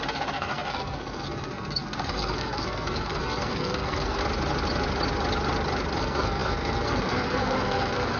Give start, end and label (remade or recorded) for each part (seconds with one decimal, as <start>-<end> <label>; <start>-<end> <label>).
0.0-4.2 remade; 4.2-6.0 recorded; 6.0-8.2 remade